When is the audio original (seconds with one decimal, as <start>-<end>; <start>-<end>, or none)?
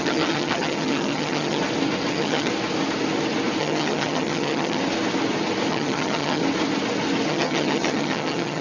1.6-2.1; 2.5-3.6; 4.8-5.7; 6.4-7.3